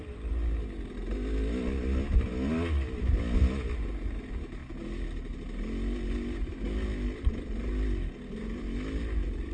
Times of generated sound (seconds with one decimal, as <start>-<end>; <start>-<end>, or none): none